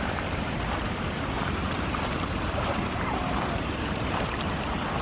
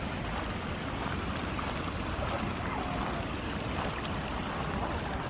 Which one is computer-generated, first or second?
first